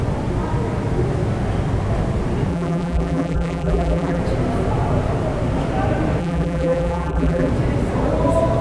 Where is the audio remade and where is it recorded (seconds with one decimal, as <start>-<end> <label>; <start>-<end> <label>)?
0.0-2.5 recorded; 2.5-4.2 remade; 4.2-6.2 recorded; 6.2-7.5 remade; 7.5-8.6 recorded